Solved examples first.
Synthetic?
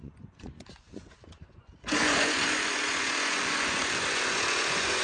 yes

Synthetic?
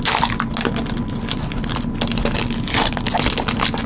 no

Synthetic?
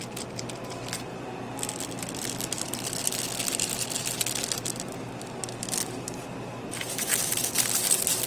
no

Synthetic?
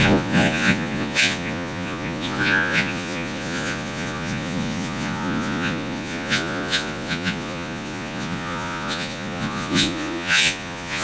yes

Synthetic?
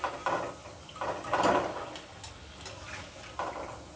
no